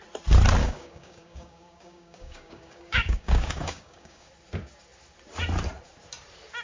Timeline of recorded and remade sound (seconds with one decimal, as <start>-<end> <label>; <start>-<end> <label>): 0.0-0.6 recorded; 0.6-4.3 remade; 4.3-6.6 recorded